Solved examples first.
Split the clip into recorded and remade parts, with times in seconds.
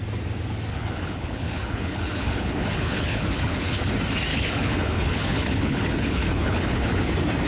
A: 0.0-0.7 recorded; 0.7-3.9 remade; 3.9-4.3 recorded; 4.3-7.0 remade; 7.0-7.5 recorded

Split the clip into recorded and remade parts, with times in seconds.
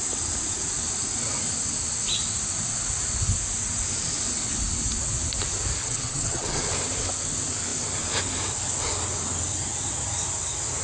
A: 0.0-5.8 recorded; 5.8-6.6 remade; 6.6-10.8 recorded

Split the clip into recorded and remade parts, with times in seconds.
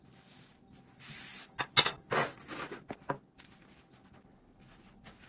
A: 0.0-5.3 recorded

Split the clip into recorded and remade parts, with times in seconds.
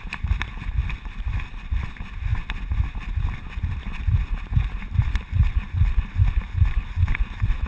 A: 0.0-7.7 recorded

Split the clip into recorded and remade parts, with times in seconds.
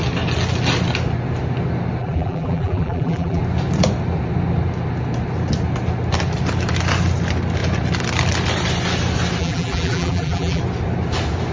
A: 0.0-2.0 recorded; 2.0-3.4 remade; 3.4-9.4 recorded; 9.4-10.6 remade; 10.6-11.5 recorded